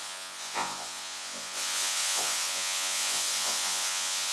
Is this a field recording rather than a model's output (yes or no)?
no